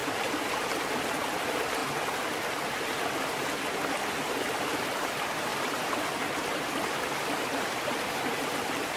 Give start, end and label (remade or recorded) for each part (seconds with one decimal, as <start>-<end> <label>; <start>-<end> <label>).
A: 0.0-1.8 remade; 1.8-4.7 recorded; 4.7-9.0 remade